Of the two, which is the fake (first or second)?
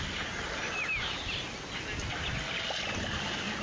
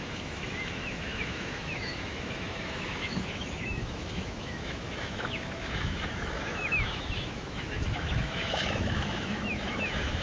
second